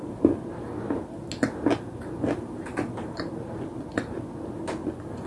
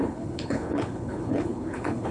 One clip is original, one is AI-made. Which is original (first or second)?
first